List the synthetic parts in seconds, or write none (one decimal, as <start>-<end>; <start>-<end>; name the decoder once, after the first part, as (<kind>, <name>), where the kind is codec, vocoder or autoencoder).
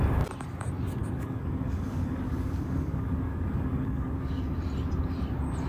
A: 1.0-4.4 (codec, DAC)